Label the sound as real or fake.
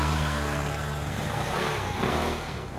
fake